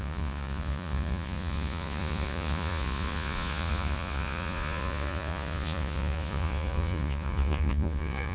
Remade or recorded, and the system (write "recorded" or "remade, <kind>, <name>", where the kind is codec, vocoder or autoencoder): remade, vocoder, Vocos